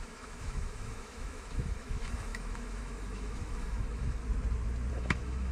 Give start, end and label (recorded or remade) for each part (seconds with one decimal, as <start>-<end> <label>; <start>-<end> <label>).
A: 0.0-4.2 remade; 4.2-4.9 recorded; 4.9-5.5 remade

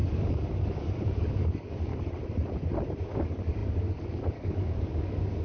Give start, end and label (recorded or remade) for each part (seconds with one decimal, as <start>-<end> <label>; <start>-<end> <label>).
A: 0.0-1.9 remade; 1.9-3.0 recorded; 3.0-5.4 remade

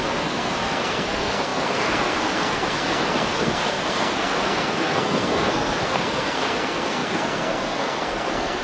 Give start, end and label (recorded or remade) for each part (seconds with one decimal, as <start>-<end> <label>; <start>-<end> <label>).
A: 0.0-8.6 remade

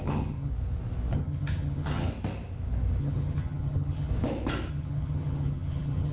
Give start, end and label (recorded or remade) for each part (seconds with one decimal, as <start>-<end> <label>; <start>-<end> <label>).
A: 0.0-0.5 remade; 0.5-1.1 recorded; 1.1-2.1 remade; 2.1-3.0 recorded; 3.0-4.1 remade; 4.1-4.7 recorded; 4.7-6.1 remade

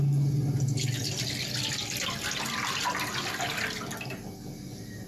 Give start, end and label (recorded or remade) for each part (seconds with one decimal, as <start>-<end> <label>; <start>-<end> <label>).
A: 0.0-5.1 recorded

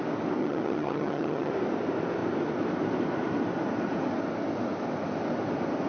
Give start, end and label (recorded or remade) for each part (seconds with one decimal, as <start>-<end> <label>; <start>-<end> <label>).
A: 0.0-0.4 recorded; 0.4-1.5 remade; 1.5-5.9 recorded

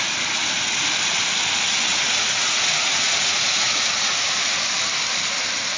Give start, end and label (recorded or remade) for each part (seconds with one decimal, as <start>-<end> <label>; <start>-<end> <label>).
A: 0.0-1.9 recorded; 1.9-4.6 remade; 4.6-5.8 recorded

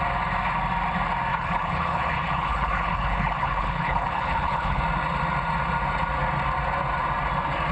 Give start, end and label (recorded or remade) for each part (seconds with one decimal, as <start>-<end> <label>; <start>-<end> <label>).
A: 0.0-1.3 recorded; 1.3-4.8 remade; 4.8-7.7 recorded